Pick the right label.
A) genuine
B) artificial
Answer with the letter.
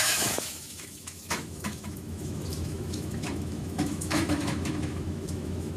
B